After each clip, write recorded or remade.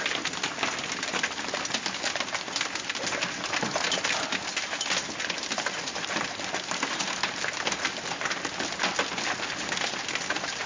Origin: recorded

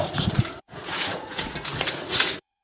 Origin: remade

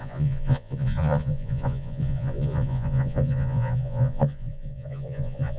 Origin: remade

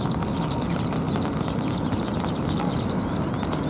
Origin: recorded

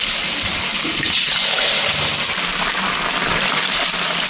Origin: recorded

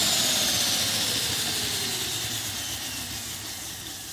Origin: recorded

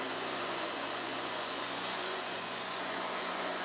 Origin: remade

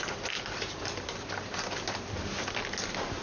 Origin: recorded